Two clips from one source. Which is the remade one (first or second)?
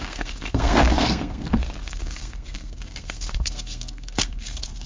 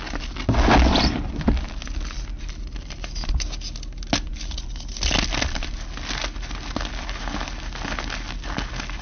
first